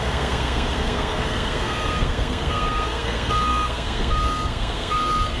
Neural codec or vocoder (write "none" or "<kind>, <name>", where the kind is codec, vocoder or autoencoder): codec, SNAC